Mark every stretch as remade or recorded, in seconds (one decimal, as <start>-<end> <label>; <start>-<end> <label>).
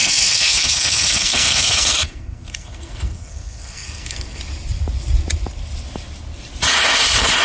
0.0-4.4 remade; 4.4-7.4 recorded